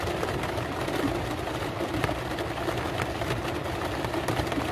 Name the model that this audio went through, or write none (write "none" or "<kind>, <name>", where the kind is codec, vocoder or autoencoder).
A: none